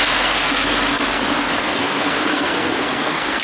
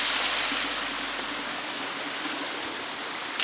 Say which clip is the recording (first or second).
second